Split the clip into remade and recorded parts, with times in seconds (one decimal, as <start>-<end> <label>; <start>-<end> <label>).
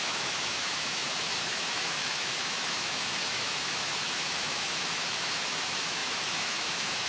0.0-7.1 remade